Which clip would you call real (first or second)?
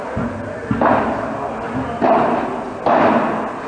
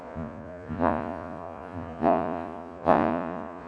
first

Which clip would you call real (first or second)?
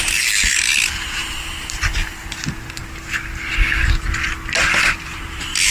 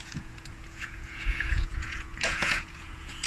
first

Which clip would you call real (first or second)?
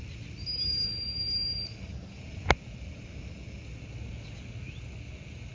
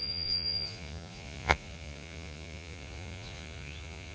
first